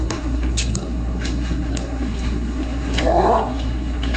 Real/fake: fake